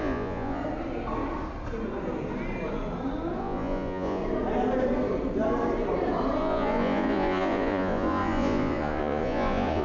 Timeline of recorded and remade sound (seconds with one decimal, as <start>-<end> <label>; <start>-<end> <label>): 0.0-0.6 remade; 0.6-3.4 recorded; 3.4-4.2 remade; 4.2-6.4 recorded; 6.4-9.8 remade